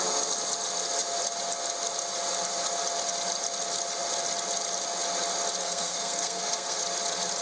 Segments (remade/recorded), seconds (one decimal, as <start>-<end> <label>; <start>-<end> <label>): 0.0-5.6 recorded; 5.6-6.8 remade; 6.8-7.4 recorded